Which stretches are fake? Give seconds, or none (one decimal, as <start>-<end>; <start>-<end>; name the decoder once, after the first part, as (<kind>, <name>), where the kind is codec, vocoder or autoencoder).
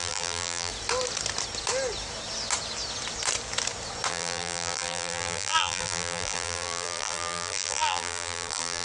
0.0-0.7 (vocoder, BigVGAN v2); 4.1-8.8